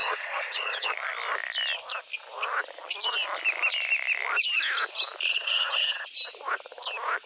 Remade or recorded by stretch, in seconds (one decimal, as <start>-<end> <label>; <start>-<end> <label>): 0.0-0.9 remade; 0.9-5.3 recorded; 5.3-6.1 remade; 6.1-7.3 recorded